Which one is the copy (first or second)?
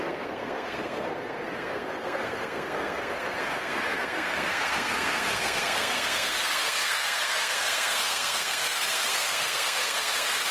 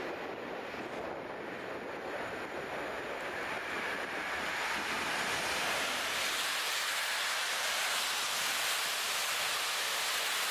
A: first